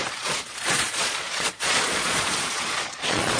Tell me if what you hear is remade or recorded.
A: remade